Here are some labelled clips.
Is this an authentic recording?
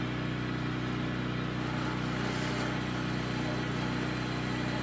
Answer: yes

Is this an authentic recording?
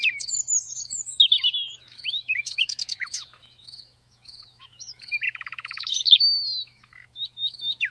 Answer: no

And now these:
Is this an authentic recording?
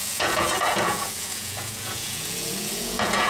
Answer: no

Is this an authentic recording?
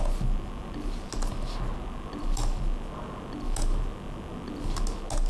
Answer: yes